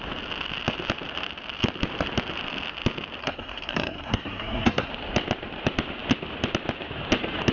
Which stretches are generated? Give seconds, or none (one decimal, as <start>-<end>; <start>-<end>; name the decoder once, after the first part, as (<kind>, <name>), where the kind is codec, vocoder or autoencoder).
3.2-4.9 (codec, SNAC)